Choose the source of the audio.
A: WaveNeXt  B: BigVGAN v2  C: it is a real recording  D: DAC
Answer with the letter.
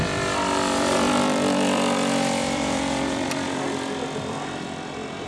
B